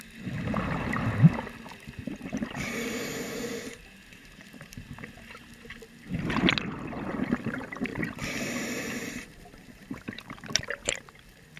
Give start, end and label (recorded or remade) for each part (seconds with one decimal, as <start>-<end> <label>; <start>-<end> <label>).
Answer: 0.0-4.2 recorded; 4.2-4.8 remade; 4.8-7.9 recorded; 7.9-10.9 remade; 10.9-11.6 recorded